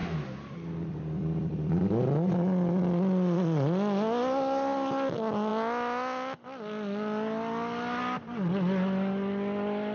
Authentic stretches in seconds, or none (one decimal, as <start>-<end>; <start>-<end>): 0.0-9.9